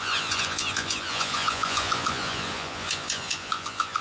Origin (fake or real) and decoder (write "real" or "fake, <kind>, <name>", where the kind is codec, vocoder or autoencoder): fake, vocoder, Vocos